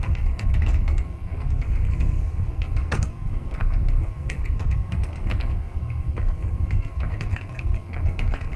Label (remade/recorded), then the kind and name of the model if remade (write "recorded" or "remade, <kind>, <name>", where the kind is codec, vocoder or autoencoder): remade, codec, SNAC